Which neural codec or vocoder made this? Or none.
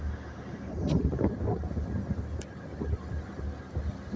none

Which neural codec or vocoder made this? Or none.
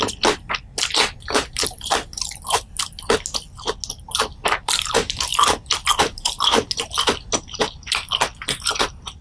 none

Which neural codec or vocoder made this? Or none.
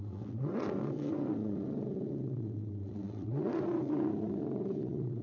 vocoder, WaveNeXt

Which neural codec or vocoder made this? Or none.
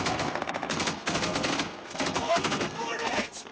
codec, SNAC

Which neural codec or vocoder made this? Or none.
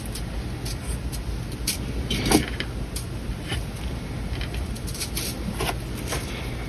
none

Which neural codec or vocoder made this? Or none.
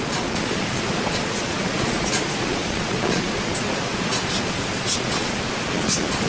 vocoder, Vocos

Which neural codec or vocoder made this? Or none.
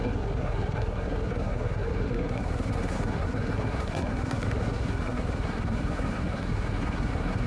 codec, SNAC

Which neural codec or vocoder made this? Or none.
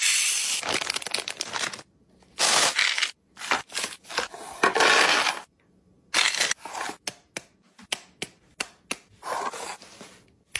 none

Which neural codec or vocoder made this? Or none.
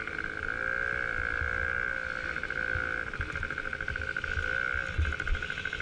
none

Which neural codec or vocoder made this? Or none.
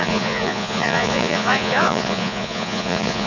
vocoder, Vocos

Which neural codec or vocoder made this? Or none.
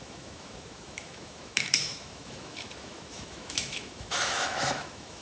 autoencoder, DAC-VAE